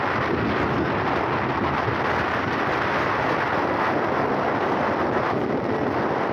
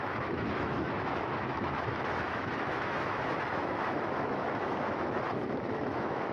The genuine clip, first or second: first